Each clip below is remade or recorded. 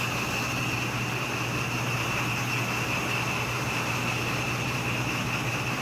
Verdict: recorded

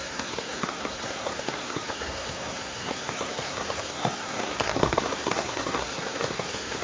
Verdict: remade